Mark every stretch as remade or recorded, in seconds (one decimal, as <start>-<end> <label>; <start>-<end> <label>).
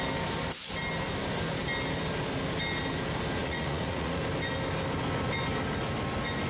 0.0-3.4 recorded; 3.4-4.2 remade; 4.2-6.5 recorded